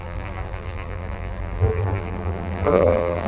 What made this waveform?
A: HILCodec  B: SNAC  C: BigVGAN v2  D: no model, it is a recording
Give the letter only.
C